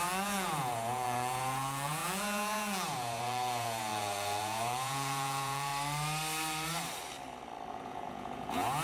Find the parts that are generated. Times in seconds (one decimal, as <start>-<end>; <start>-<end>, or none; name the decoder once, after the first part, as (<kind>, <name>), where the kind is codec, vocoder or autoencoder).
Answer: 0.0-5.7 (vocoder, Vocos); 7.7-8.8